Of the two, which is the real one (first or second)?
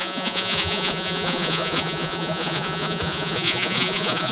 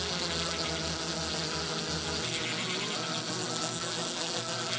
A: second